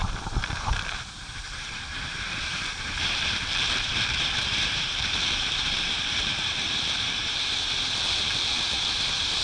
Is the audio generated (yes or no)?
yes